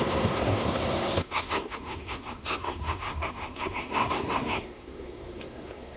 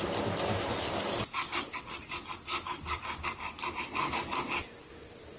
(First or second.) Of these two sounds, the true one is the second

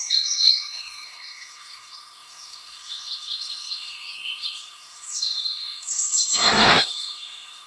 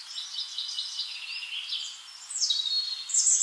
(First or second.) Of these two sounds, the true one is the second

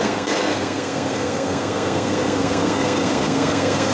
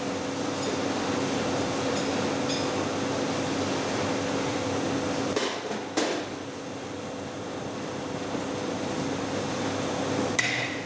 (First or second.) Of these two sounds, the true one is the second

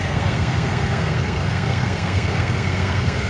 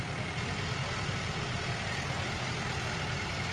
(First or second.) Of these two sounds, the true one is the second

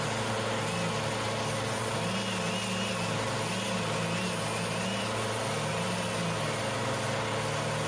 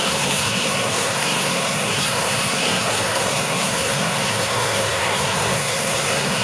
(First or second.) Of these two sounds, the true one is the first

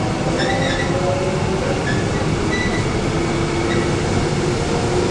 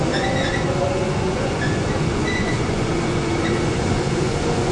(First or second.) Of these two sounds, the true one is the first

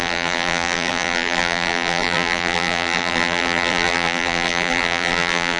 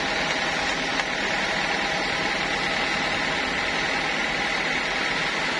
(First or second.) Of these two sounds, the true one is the second